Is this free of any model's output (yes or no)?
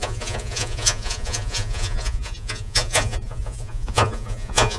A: no